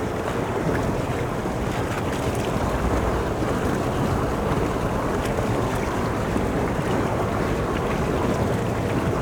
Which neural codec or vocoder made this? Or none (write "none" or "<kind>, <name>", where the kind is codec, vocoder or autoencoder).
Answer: none